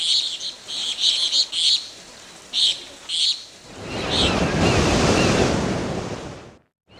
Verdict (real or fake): real